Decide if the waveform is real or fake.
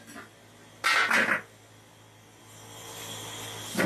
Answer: real